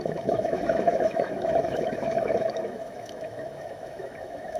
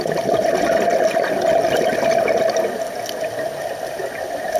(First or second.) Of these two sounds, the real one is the second